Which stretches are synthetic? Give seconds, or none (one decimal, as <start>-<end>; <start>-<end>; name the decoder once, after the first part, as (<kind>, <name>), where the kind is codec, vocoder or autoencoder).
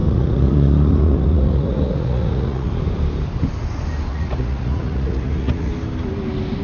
0.0-2.7 (vocoder, Vocos); 4.1-5.7